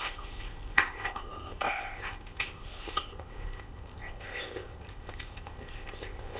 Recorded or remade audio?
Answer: remade